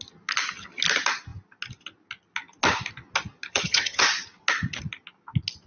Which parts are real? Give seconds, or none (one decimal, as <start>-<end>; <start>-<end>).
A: 0.0-3.5; 4.0-5.7